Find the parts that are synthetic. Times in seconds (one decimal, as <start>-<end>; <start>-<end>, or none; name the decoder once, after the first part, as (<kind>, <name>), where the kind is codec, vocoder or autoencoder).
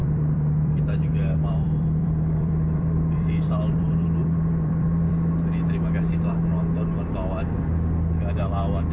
0.0-5.1 (vocoder, BigVGAN v2)